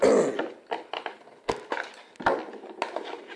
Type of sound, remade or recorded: recorded